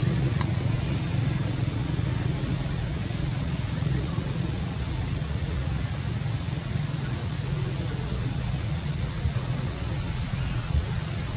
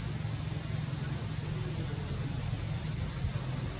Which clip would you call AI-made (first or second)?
first